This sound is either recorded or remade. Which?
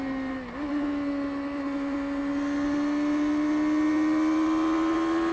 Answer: recorded